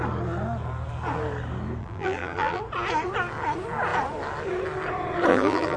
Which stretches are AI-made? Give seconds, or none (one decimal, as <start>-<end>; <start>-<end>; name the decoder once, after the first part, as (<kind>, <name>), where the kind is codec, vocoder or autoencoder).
1.8-2.6 (vocoder, BigVGAN v2); 5.3-5.8